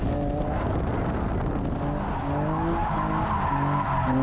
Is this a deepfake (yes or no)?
no